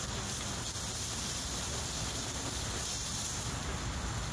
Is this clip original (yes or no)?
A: yes